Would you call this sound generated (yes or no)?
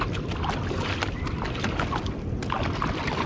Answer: no